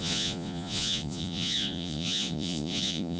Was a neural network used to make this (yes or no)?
yes